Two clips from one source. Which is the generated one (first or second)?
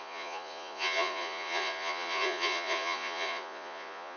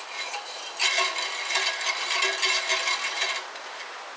first